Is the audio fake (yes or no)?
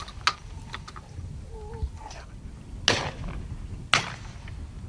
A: no